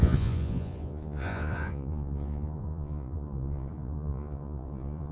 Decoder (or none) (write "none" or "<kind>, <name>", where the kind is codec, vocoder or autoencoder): vocoder, Vocos